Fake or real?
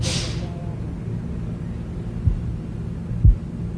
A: real